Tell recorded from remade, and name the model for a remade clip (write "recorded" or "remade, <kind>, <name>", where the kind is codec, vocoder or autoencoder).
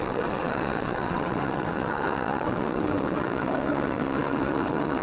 remade, vocoder, WaveNeXt